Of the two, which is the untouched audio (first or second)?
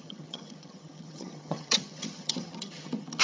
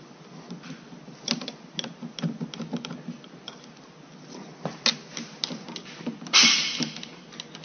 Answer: second